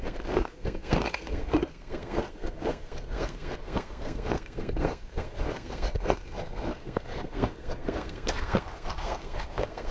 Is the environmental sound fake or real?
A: fake